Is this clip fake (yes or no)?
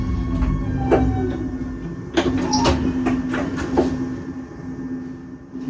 no